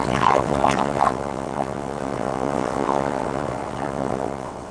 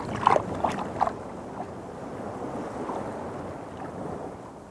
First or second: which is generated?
first